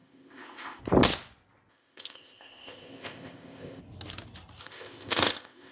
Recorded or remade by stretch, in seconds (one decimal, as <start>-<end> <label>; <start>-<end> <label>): 0.0-0.8 remade; 0.8-1.7 recorded; 1.7-3.8 remade; 3.8-4.6 recorded; 4.6-5.7 remade